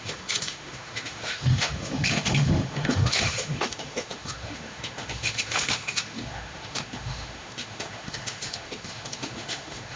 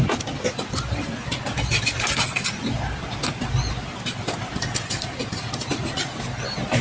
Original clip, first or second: second